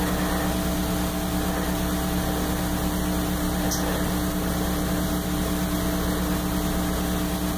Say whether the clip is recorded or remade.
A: recorded